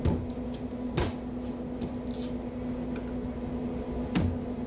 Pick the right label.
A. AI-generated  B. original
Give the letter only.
B